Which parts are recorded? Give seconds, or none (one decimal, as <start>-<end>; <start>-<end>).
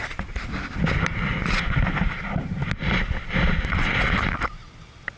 0.0-5.2